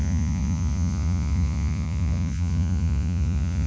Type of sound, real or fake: fake